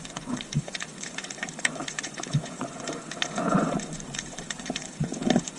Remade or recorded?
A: remade